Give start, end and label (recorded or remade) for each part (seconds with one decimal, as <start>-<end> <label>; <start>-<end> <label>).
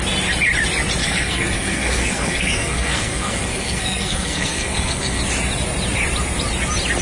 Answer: 0.0-1.0 recorded; 1.0-5.2 remade; 5.2-7.0 recorded